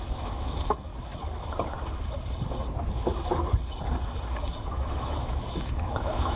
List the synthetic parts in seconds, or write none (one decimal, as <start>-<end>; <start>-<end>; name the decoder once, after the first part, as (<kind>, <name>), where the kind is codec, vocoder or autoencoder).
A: 0.0-0.9 (autoencoder, DAC-VAE); 4.7-6.4